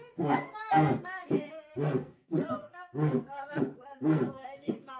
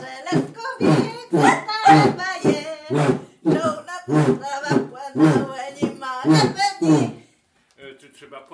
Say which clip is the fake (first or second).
first